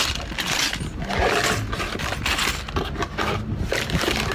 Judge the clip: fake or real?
real